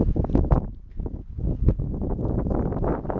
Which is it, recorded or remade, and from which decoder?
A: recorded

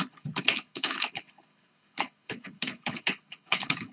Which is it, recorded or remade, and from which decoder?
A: remade, codec, HILCodec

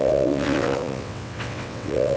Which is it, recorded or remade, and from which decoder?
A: remade, vocoder, WaveNeXt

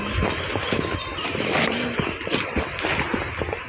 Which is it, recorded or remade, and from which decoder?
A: recorded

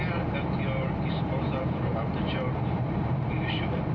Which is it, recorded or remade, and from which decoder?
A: remade, vocoder, BigVGAN v2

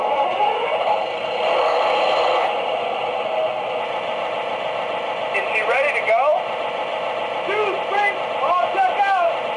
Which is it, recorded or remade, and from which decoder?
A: recorded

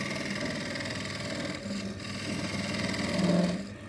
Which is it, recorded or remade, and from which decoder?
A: recorded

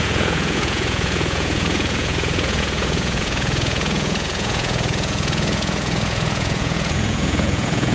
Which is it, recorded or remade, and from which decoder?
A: remade, vocoder, Vocos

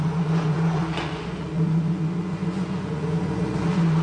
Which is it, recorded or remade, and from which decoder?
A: remade, vocoder, Vocos